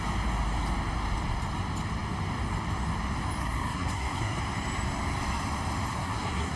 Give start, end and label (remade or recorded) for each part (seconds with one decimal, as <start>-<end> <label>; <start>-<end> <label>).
0.0-3.4 recorded; 3.4-4.4 remade; 4.4-5.9 recorded; 5.9-6.6 remade